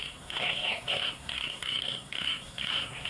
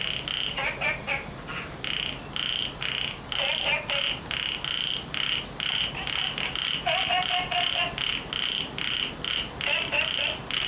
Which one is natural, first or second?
second